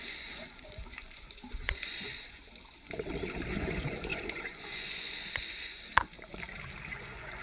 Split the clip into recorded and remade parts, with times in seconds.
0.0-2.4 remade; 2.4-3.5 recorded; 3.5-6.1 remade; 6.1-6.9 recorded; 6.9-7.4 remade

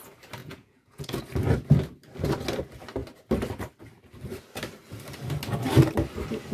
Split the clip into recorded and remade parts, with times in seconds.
0.0-0.4 recorded; 0.4-1.2 remade; 1.2-6.5 recorded

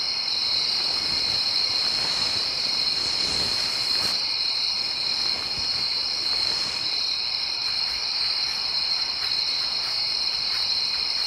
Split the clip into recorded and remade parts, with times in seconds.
0.0-0.4 recorded; 0.4-4.5 remade; 4.5-6.0 recorded; 6.0-11.3 remade

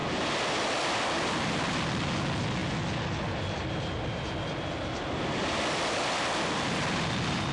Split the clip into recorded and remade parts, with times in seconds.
0.0-7.5 recorded

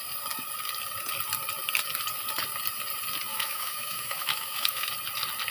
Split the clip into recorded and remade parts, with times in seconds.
0.0-3.3 recorded; 3.3-4.9 remade; 4.9-5.5 recorded